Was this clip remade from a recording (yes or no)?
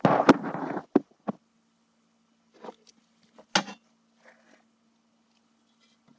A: no